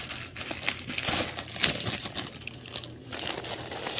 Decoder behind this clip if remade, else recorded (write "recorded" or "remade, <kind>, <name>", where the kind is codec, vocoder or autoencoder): recorded